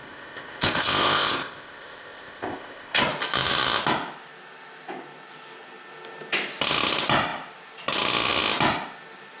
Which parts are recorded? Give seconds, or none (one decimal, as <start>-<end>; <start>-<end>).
3.0-9.4